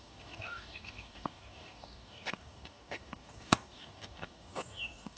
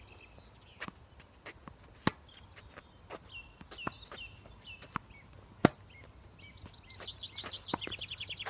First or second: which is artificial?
first